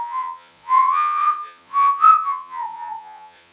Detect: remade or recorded remade